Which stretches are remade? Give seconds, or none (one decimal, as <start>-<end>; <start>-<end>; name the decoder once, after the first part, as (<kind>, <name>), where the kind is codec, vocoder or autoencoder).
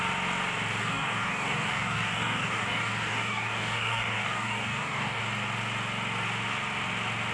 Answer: 0.8-5.2 (codec, DAC)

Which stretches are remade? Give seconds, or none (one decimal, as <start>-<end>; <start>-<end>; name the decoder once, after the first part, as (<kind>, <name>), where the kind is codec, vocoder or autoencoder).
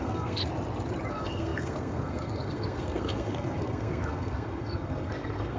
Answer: 0.0-0.4 (codec, SNAC); 1.1-5.6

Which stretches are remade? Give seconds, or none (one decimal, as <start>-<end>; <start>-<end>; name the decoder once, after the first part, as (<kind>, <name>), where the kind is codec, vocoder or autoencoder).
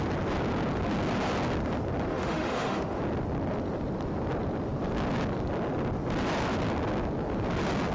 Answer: 2.1-3.0 (autoencoder, DAC-VAE)